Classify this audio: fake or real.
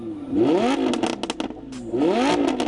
real